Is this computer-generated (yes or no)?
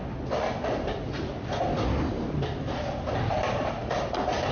no